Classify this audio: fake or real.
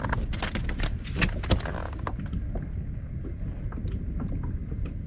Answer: real